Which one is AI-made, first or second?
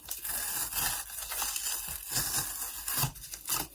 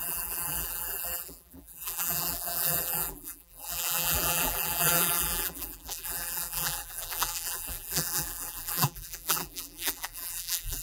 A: second